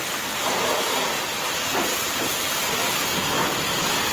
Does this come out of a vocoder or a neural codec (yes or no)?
no